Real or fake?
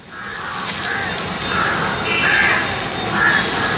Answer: real